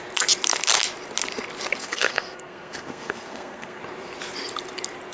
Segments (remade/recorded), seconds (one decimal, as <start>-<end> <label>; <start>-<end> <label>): 0.0-1.8 recorded; 1.8-3.8 remade; 3.8-5.1 recorded